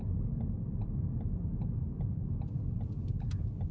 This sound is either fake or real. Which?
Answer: real